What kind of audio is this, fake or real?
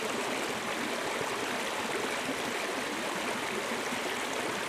real